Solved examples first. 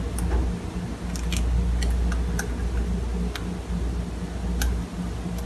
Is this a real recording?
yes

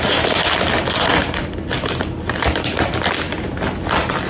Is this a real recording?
yes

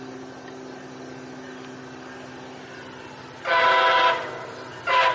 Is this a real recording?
yes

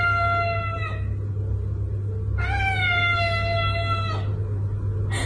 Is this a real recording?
yes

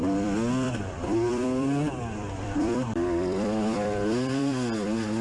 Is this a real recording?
no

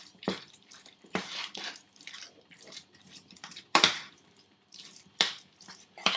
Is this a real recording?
no